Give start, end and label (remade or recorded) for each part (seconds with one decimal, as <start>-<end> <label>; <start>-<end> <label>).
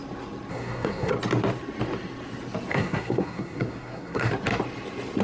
0.0-0.5 recorded; 0.5-1.1 remade; 1.1-2.7 recorded; 2.7-4.3 remade; 4.3-5.2 recorded